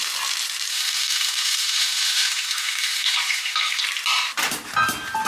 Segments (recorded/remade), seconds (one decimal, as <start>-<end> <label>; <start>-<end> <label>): 0.0-0.7 recorded; 0.7-3.8 remade; 3.8-5.3 recorded